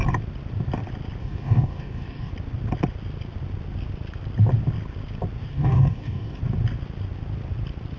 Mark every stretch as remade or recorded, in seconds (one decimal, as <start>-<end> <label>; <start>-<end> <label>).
0.0-1.2 recorded; 1.2-2.3 remade; 2.3-5.5 recorded; 5.5-6.4 remade; 6.4-8.0 recorded